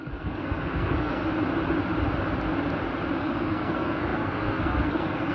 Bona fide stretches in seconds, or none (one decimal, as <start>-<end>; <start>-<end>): 1.2-3.2